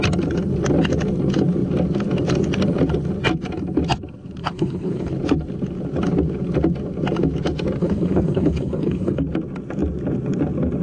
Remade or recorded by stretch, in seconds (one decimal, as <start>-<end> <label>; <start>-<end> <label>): 0.0-4.4 recorded; 4.4-5.1 remade; 5.1-7.8 recorded; 7.8-9.2 remade; 9.2-10.8 recorded